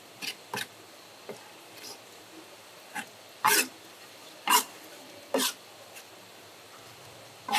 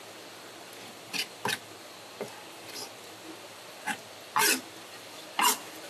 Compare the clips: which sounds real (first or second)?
second